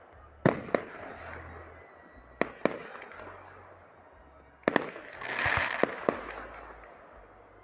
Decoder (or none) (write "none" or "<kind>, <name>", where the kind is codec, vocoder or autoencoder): none